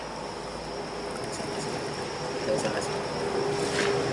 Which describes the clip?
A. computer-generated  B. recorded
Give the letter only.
B